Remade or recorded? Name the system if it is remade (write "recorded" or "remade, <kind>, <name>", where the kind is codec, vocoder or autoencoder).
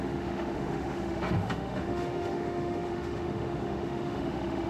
remade, autoencoder, DAC-VAE